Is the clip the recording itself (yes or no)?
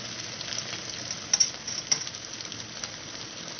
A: yes